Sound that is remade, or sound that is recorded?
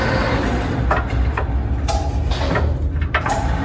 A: recorded